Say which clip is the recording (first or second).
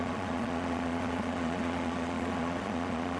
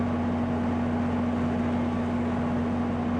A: second